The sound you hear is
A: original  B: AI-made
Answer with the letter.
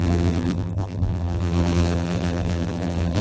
B